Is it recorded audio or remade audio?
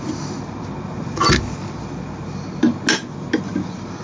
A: recorded